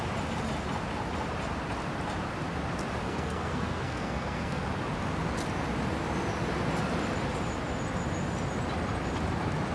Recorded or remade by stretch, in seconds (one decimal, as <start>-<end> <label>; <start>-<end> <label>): 0.0-3.0 recorded; 3.0-4.6 remade; 4.6-9.7 recorded